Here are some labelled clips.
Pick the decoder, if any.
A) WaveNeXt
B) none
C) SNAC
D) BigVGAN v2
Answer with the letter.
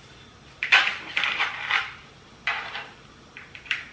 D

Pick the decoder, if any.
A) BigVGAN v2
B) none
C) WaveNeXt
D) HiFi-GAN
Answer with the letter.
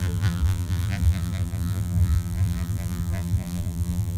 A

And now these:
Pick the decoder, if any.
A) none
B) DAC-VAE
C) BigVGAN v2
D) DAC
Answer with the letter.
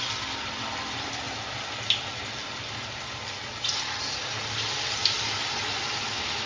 A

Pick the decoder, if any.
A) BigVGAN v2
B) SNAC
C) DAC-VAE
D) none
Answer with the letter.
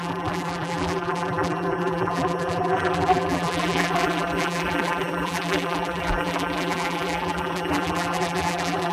A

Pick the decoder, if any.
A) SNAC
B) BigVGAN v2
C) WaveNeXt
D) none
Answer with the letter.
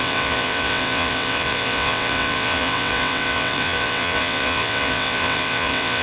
C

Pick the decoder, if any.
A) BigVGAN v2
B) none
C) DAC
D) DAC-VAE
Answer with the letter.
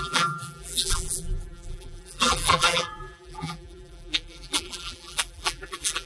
A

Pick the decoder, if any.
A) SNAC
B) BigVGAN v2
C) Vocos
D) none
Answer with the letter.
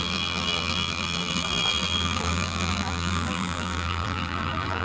B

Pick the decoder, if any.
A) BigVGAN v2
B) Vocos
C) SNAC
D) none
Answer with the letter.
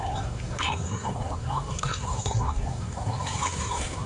C